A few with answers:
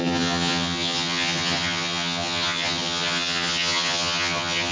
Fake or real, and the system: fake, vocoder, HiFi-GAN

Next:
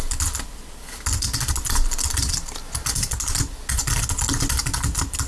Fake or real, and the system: real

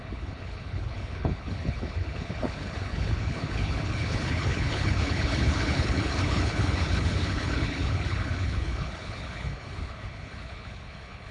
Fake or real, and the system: fake, codec, HILCodec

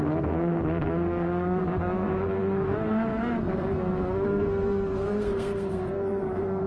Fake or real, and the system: fake, codec, SNAC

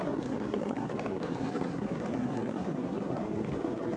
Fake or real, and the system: fake, codec, SNAC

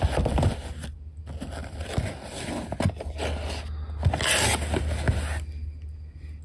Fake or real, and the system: real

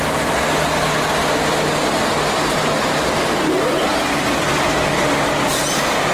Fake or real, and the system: real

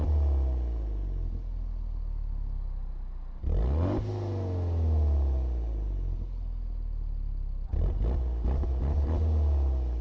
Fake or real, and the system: real